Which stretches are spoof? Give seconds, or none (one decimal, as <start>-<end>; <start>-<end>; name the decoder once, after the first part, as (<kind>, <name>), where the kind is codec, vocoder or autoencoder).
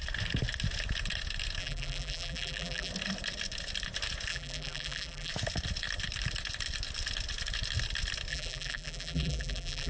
1.6-2.9 (vocoder, BigVGAN v2); 4.3-5.3; 8.3-9.9